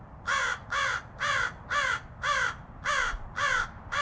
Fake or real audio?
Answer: fake